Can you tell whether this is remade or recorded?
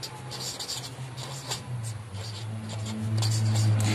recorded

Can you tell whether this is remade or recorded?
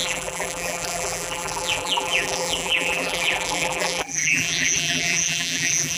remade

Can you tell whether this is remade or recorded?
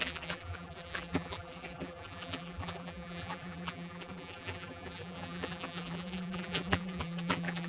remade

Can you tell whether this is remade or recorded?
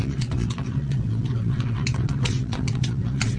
remade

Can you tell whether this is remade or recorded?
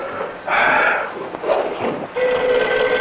recorded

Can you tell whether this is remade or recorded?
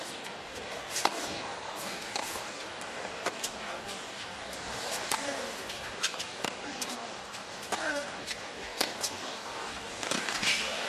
remade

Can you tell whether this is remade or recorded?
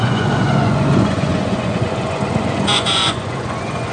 remade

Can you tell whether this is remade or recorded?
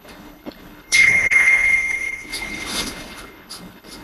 remade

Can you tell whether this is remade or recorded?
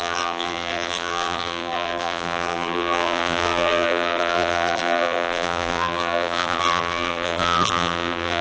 remade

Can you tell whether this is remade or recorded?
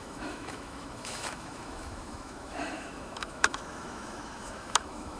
remade